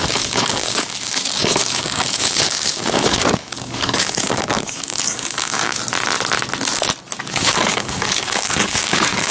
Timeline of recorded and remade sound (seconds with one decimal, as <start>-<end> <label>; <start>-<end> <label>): 0.0-5.8 remade; 5.8-7.3 recorded; 7.3-9.3 remade